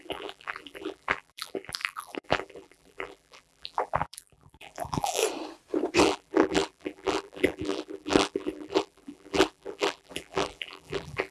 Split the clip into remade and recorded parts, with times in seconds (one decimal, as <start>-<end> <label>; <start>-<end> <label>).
0.0-5.2 remade; 5.2-6.0 recorded; 6.0-11.3 remade